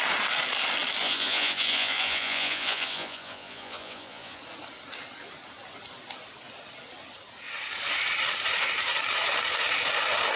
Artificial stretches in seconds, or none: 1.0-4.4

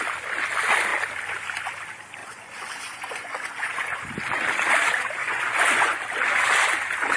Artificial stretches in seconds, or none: 2.2-4.0; 5.2-6.0

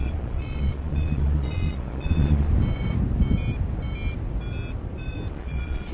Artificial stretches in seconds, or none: 0.0-2.5; 5.3-5.9

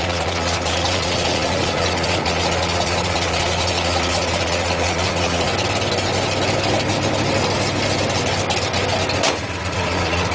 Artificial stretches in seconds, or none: 0.0-5.5; 9.3-10.3

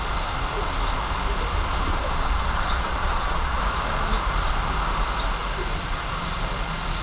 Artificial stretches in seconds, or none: 1.9-3.6